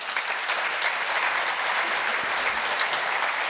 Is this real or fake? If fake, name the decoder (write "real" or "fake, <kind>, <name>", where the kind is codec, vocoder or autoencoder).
real